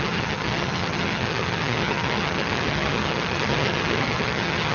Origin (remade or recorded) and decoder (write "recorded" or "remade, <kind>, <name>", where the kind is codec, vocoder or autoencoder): remade, vocoder, HiFi-GAN